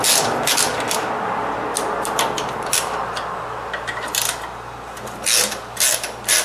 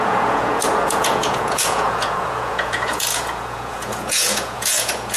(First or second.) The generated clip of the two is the second